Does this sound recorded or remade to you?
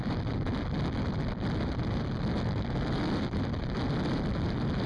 recorded